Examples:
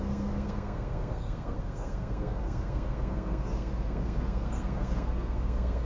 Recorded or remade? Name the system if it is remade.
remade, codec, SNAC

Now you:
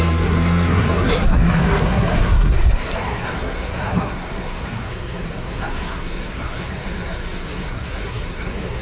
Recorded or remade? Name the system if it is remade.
remade, codec, SNAC